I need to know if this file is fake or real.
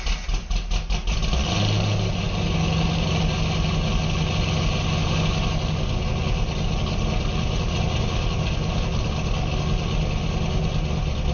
real